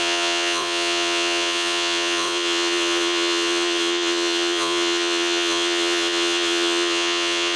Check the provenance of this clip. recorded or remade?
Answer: remade